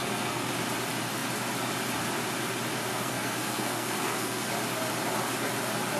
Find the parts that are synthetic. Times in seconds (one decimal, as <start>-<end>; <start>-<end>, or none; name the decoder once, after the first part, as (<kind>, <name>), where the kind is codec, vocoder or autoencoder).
0.0-0.5 (codec, SNAC); 2.9-4.5